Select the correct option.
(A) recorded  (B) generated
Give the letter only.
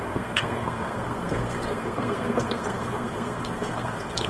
B